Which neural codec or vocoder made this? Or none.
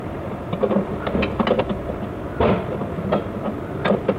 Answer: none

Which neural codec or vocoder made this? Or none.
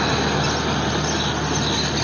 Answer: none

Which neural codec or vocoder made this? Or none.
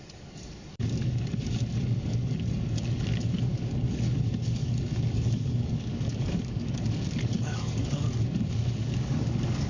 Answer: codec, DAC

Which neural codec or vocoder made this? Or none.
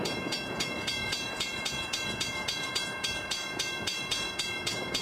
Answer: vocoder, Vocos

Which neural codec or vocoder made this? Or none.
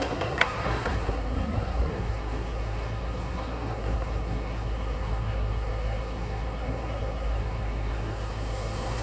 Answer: codec, SNAC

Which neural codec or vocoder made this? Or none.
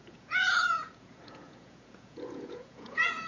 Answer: vocoder, Vocos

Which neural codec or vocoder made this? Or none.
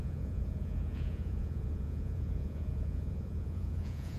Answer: vocoder, Vocos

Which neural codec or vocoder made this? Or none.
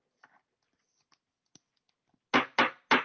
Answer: none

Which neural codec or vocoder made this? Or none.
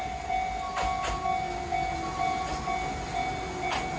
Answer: none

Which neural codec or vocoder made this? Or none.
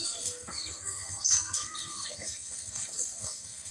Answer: codec, SNAC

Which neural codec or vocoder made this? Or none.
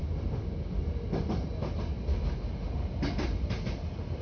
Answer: none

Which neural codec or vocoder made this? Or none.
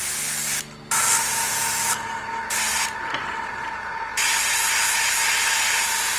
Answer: none